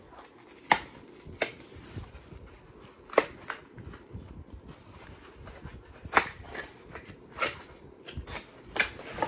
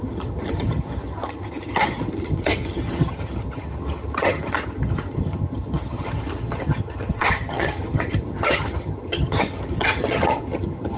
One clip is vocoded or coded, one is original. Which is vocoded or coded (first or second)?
second